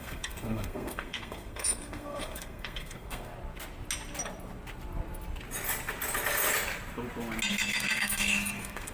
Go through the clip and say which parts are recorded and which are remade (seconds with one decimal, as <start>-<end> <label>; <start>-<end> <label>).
0.0-3.3 remade; 3.3-7.5 recorded; 7.5-8.9 remade